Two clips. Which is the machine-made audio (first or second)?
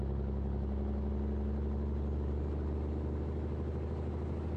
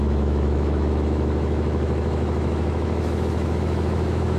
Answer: second